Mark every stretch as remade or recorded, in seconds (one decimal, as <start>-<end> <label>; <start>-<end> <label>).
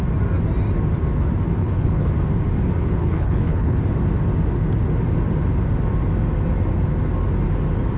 0.0-1.6 recorded; 1.6-2.1 remade; 2.1-3.0 recorded; 3.0-3.8 remade; 3.8-8.0 recorded